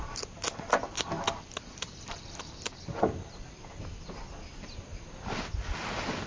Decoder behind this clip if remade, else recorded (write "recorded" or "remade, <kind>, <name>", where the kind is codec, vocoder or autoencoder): recorded